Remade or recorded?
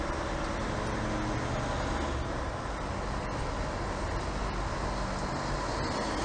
recorded